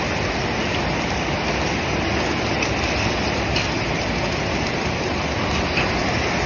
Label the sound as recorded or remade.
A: recorded